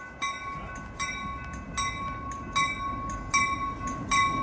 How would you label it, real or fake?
real